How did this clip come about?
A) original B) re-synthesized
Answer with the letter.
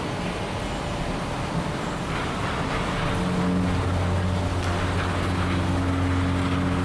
A